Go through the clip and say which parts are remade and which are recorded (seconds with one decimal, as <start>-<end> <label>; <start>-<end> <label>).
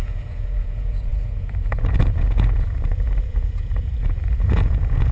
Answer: 0.0-5.1 remade